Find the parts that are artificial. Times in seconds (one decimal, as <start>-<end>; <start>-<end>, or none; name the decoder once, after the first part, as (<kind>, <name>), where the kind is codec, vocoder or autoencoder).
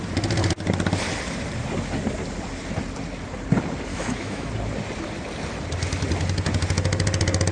3.9-4.5 (autoencoder, DAC-VAE)